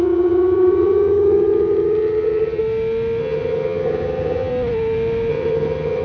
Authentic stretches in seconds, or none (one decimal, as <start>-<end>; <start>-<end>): 2.6-3.2; 4.5-5.3